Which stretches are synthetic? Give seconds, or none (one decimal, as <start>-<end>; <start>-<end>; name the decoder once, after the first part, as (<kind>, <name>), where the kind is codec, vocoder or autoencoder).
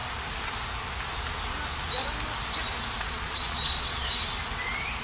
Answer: 3.0-4.1 (vocoder, Vocos)